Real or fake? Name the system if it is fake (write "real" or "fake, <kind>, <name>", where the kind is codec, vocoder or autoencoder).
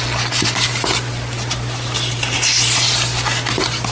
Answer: real